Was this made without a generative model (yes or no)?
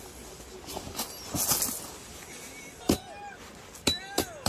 yes